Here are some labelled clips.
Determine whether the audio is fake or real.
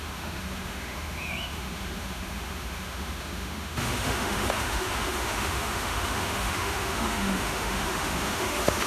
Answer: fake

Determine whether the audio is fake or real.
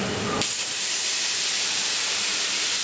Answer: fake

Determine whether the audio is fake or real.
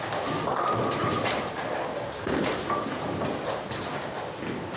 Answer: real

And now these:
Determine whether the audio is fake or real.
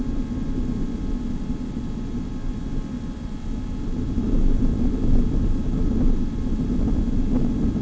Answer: real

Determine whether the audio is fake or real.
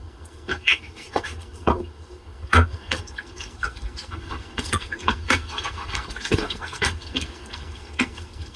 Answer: fake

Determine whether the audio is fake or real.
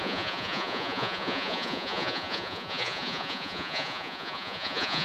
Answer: fake